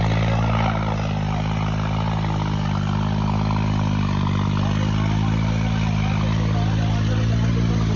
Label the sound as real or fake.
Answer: real